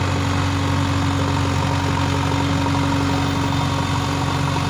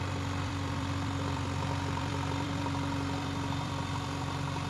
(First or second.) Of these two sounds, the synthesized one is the second